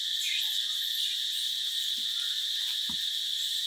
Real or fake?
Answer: real